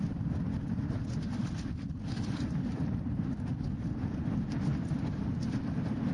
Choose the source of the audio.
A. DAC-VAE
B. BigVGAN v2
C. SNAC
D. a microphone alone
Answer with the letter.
D